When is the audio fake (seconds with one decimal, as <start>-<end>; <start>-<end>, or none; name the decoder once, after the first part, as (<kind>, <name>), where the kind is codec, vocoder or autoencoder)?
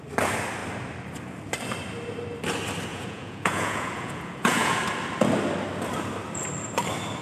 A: 2.9-4.8 (vocoder, Vocos)